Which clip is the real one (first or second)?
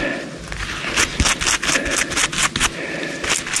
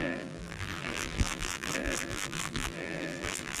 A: first